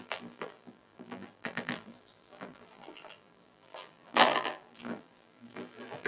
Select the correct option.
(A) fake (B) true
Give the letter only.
A